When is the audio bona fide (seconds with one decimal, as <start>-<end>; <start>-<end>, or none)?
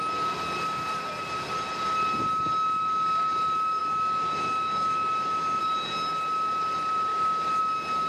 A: 0.0-3.8; 5.6-7.1; 7.6-8.1